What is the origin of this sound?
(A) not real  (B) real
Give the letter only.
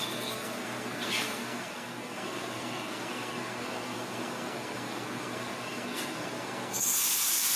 A